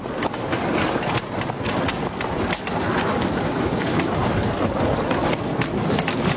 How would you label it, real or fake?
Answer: real